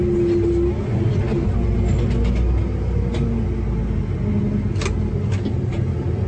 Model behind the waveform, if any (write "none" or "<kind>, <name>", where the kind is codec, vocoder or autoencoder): none